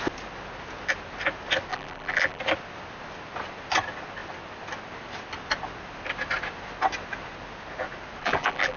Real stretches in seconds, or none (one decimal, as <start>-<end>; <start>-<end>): 0.0-1.7; 2.4-8.2